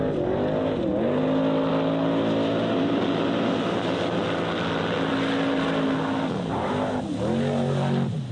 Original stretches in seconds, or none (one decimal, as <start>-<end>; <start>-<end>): 0.0-8.3